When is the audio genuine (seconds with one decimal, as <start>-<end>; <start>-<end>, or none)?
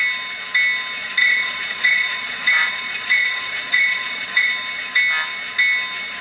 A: 0.0-1.2; 4.5-6.2